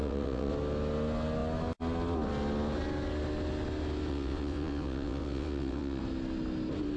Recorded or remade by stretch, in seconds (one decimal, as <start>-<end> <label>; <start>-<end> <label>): 0.0-0.5 remade; 0.5-4.1 recorded; 4.1-6.0 remade; 6.0-7.0 recorded